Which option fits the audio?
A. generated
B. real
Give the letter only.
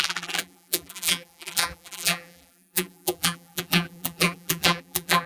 A